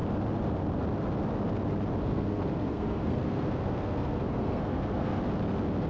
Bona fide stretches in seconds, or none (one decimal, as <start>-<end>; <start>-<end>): 0.0-2.0; 5.2-5.9